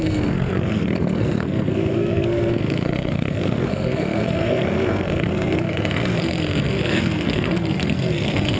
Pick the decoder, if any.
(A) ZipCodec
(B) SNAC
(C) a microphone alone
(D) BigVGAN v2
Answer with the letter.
B